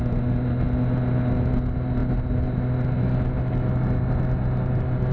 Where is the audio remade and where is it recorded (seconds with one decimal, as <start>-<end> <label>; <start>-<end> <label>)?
0.0-5.1 recorded